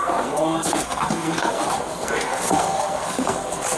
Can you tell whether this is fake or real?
fake